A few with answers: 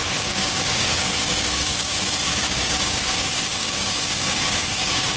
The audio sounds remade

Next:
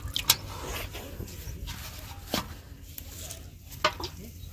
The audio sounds recorded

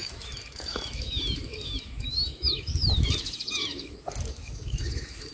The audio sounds remade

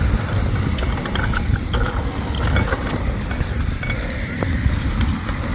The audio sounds recorded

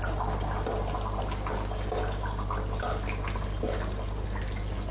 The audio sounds recorded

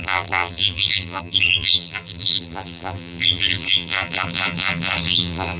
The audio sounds remade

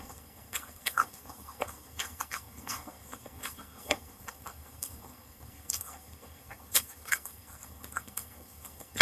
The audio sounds remade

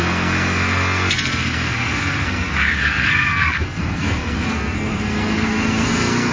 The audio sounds remade